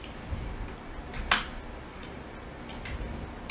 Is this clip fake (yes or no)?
no